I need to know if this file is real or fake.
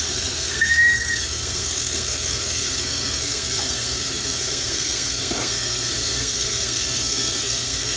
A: fake